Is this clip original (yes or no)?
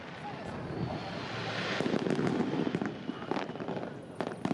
yes